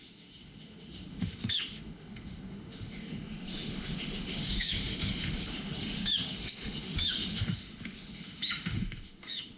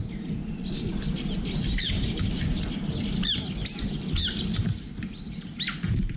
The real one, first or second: second